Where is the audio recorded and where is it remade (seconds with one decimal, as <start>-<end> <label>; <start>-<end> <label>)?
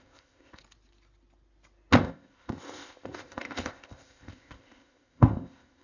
0.0-0.6 remade; 0.6-2.0 recorded; 2.0-5.8 remade